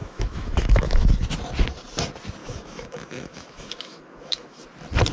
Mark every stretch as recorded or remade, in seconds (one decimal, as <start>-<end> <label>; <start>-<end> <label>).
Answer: 0.0-1.1 remade; 1.1-2.4 recorded; 2.4-4.6 remade; 4.6-5.1 recorded